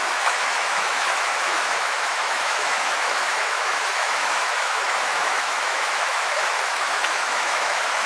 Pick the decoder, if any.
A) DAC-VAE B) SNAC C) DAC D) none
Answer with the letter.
A